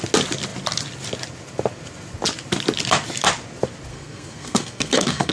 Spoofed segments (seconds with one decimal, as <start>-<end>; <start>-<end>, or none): 3.9-5.3